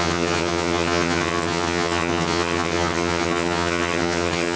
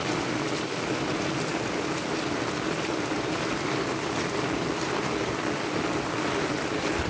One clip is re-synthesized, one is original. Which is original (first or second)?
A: second